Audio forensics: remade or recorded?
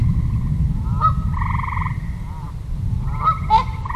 recorded